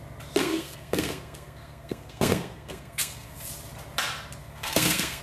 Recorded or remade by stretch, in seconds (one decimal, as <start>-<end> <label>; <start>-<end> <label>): 0.0-0.4 recorded; 0.4-3.5 remade; 3.5-4.4 recorded; 4.4-5.2 remade